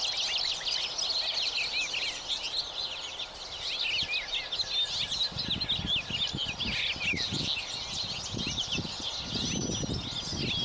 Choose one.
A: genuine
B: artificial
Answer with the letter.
A